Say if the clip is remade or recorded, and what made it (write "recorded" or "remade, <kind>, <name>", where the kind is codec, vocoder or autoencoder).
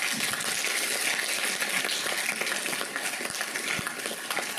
recorded